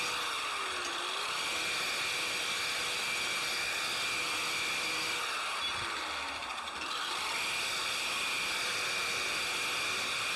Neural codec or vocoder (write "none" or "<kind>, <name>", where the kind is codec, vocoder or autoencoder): none